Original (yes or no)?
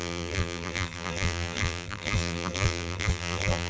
no